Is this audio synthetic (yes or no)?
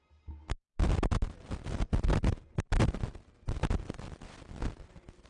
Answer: no